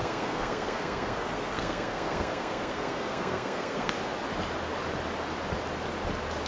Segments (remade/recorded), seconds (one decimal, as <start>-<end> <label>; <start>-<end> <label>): 0.0-3.9 remade; 3.9-6.5 recorded